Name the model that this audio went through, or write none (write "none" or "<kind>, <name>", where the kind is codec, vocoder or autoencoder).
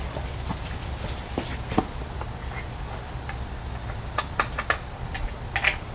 none